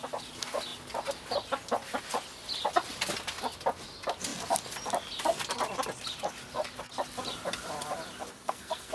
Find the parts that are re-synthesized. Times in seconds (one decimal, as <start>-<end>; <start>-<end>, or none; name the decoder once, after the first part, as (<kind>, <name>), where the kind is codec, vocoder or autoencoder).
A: 8.3-8.9 (codec, SNAC)